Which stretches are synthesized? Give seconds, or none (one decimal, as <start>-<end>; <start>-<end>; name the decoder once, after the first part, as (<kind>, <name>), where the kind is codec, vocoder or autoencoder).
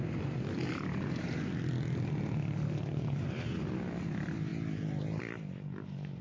none